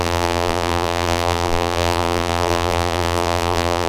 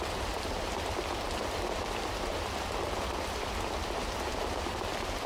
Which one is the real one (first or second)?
second